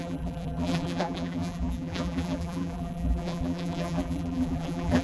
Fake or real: fake